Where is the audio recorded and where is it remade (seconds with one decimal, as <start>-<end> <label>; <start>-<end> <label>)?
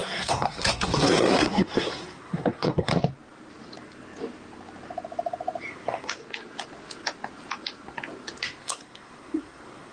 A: 0.0-2.9 remade; 2.9-5.7 recorded; 5.7-6.2 remade; 6.2-8.4 recorded; 8.4-9.9 remade